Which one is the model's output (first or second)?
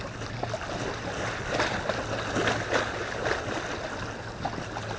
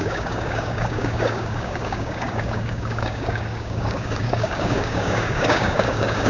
second